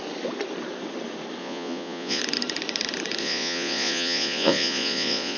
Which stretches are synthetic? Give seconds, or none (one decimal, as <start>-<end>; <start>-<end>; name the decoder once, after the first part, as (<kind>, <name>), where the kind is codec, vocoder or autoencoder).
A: 1.4-2.2 (vocoder, Vocos); 3.2-5.4